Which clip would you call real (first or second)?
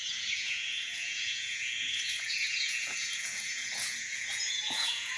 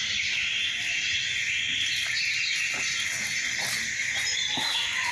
second